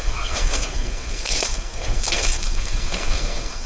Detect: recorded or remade remade